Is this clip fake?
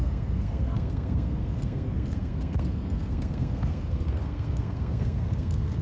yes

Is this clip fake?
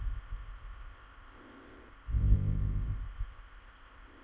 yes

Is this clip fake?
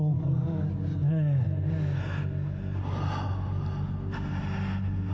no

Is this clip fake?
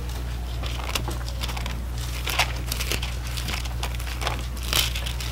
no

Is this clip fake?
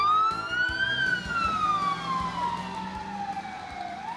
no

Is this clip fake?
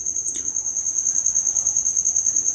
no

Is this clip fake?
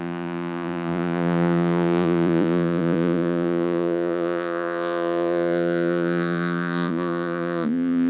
yes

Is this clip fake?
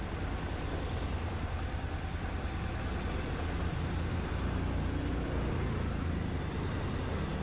no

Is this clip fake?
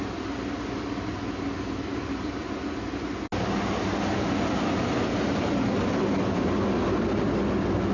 no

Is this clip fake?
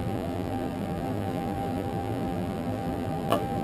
yes